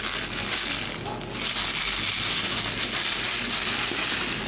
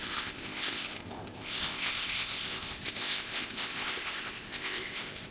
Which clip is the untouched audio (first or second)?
first